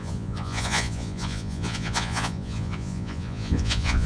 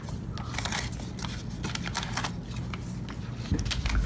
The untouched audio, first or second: second